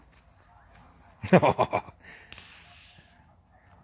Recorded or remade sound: recorded